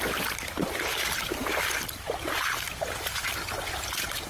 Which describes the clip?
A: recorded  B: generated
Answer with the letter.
A